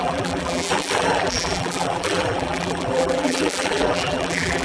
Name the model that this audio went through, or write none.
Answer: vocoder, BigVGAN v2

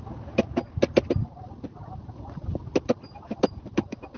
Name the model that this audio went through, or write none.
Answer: none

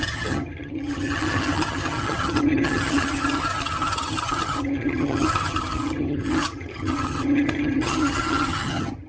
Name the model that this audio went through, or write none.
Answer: vocoder, HiFi-GAN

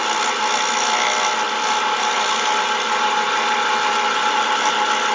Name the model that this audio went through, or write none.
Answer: none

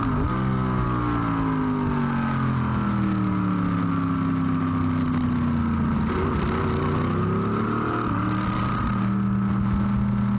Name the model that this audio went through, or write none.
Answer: none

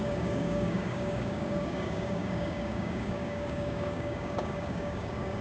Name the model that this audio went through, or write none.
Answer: codec, DAC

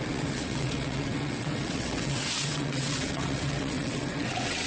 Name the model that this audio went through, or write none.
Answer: vocoder, WaveNeXt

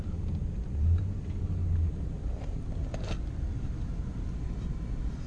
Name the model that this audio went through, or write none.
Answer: none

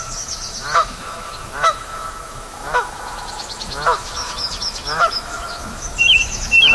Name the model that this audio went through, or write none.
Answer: autoencoder, DAC-VAE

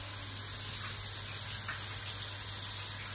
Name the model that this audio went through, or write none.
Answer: none